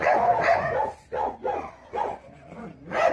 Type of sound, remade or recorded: remade